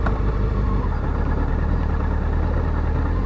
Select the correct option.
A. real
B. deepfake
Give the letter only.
A